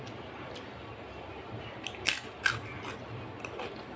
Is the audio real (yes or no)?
yes